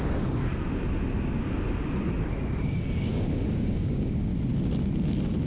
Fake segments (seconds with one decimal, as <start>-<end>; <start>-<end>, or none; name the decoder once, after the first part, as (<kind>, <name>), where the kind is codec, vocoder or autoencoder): 0.0-0.5 (codec, DAC); 3.1-4.3